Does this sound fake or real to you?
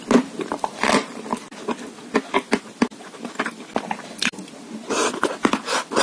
real